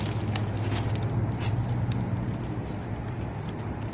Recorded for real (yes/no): yes